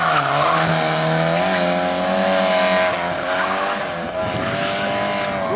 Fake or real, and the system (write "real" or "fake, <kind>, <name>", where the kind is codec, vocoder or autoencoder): real